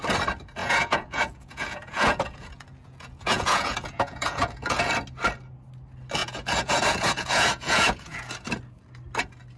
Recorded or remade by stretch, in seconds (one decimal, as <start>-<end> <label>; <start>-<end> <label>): 0.0-0.6 recorded; 0.6-4.9 remade; 4.9-6.2 recorded; 6.2-8.3 remade; 8.3-9.6 recorded